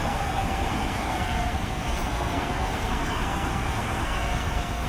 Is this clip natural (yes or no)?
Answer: no